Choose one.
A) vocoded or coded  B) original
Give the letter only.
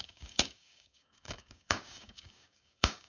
A